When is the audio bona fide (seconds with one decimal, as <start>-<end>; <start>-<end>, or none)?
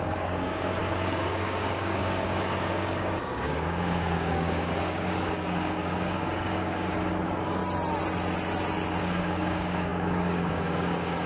7.6-9.0